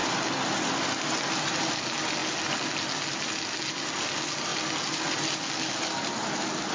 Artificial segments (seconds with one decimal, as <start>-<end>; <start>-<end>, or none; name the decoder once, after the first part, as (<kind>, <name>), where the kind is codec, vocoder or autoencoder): none

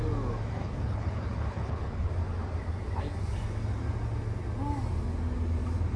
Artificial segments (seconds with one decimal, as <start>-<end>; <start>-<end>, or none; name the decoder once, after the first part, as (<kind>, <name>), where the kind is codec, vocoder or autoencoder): 0.6-2.1 (codec, HILCodec)

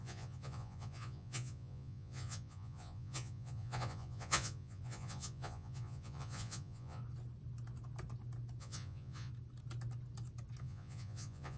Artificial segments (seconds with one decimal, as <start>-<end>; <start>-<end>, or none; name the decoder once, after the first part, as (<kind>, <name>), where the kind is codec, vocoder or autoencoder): 0.0-7.0 (vocoder, Vocos); 8.6-9.3; 10.6-11.6

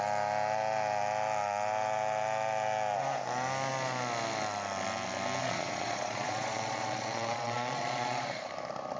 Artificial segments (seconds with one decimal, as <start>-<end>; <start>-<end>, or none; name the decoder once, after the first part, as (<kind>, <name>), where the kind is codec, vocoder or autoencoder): 5.4-8.5 (vocoder, Vocos)